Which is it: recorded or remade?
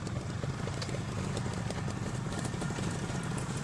recorded